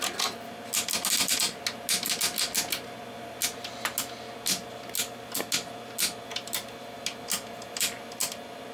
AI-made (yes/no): no